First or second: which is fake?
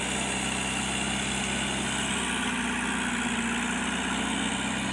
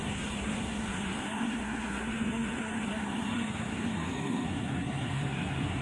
second